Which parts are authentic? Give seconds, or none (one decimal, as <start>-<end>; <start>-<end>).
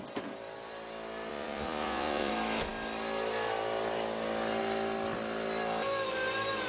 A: 0.0-1.3; 2.3-6.7